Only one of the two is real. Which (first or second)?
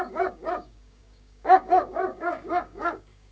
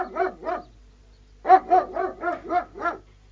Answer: second